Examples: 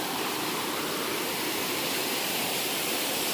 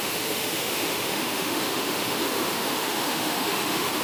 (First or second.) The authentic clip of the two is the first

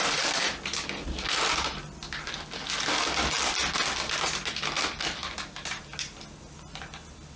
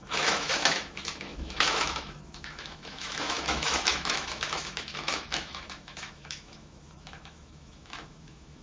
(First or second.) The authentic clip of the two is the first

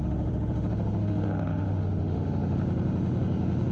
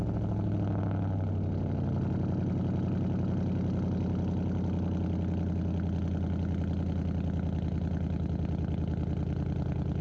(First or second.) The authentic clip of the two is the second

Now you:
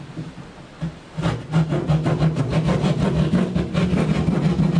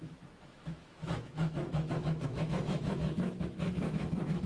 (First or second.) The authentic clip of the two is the first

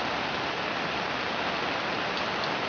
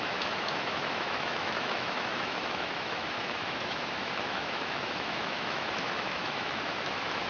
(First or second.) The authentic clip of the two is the first